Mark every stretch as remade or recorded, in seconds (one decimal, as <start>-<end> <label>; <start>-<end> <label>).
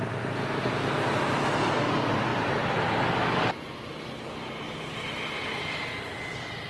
0.0-6.7 recorded